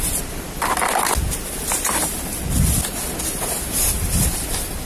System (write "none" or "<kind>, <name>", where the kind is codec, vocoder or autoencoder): none